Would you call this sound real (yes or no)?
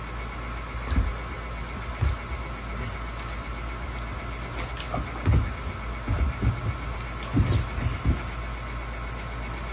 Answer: yes